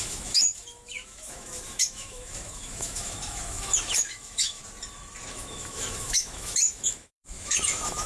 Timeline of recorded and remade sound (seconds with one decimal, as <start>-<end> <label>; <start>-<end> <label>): 0.0-4.6 remade; 4.6-5.3 recorded; 5.3-8.1 remade